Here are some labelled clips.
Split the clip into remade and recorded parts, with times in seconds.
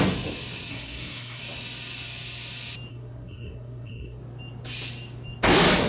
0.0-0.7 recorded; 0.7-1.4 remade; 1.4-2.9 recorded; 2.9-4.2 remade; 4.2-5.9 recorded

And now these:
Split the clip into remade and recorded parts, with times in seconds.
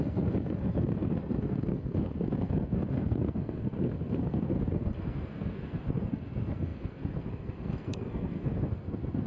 0.0-9.3 remade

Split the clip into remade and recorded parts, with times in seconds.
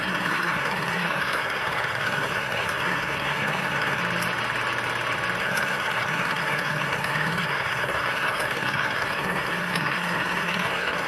0.0-4.0 remade; 4.0-5.4 recorded; 5.4-11.1 remade